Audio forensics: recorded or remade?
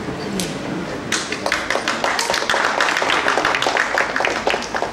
recorded